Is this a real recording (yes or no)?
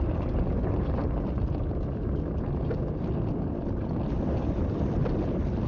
yes